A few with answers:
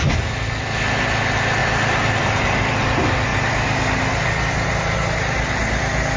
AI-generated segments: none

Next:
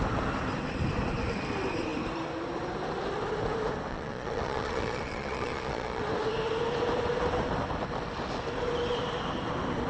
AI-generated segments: 3.9-6.0 (vocoder, Vocos)

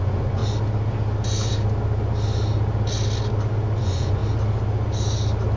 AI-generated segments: 0.0-0.4 (vocoder, Vocos); 3.8-4.2

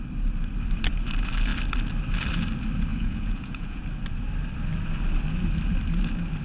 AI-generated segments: 2.9-3.8 (vocoder, Vocos)

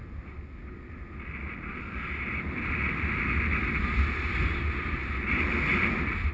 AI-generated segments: none

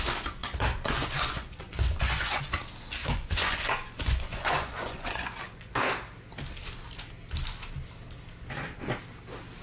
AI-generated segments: 0.4-2.4 (vocoder, Vocos); 3.0-5.9